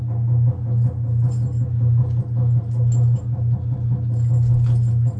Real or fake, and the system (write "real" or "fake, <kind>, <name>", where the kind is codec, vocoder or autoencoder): real